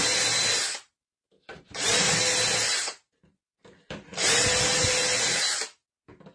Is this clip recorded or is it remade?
recorded